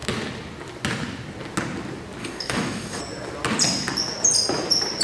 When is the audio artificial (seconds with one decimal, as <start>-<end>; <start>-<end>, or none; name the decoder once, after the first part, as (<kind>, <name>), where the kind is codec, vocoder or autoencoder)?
2.2-3.0 (codec, DAC)

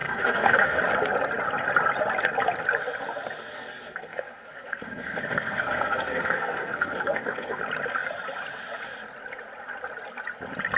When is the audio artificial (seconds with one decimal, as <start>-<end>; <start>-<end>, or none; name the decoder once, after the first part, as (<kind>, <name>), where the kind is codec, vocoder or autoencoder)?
0.0-0.8 (codec, SNAC); 3.5-7.6

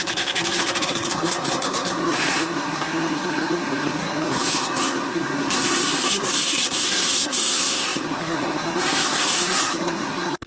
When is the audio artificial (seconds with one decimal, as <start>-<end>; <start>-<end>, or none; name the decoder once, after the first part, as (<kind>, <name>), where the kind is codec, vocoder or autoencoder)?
0.0-10.5 (codec, SNAC)

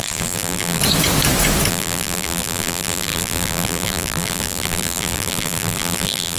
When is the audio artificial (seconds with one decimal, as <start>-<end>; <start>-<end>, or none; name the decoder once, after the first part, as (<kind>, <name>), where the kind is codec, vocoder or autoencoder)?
0.0-0.8 (vocoder, BigVGAN v2); 1.7-6.4